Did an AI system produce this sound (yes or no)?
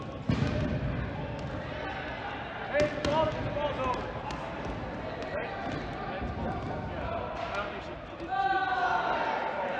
no